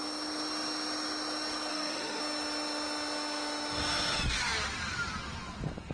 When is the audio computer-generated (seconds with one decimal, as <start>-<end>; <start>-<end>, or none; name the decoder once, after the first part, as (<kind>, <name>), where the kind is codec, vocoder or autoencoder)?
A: 1.7-2.2 (autoencoder, DAC-VAE)